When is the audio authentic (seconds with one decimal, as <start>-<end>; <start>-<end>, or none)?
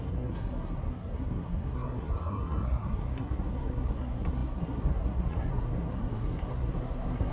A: none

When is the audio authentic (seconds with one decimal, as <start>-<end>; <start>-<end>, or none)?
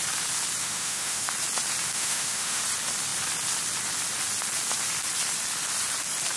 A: 0.0-0.6; 1.3-1.9; 2.6-6.4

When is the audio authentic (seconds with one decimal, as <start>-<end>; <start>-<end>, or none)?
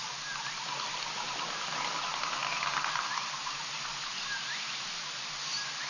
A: 0.0-5.9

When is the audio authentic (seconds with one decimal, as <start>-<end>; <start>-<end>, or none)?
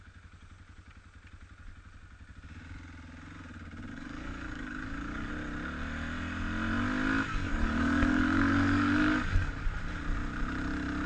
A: 0.0-3.9; 5.3-7.3; 9.6-11.1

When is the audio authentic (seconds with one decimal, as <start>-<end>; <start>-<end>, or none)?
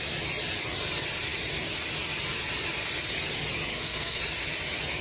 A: 0.0-3.7; 4.2-5.0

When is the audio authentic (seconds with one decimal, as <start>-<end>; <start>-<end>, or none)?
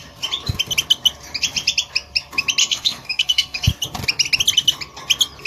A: 0.0-2.6; 3.7-5.5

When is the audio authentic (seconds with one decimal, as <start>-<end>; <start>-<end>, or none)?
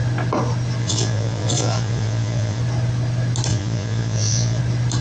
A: 0.0-0.8; 2.6-3.5; 4.6-5.0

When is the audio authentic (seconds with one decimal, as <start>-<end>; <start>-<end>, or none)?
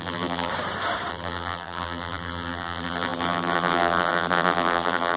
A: 0.5-1.1